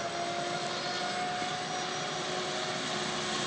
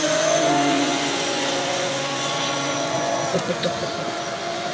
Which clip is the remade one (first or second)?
second